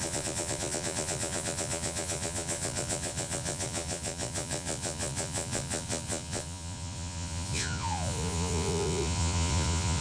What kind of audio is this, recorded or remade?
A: remade